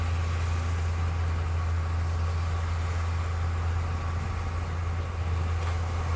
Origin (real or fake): real